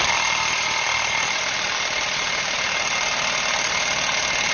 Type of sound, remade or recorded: recorded